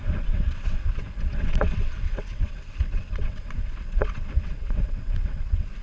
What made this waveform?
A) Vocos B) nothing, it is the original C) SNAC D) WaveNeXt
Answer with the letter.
D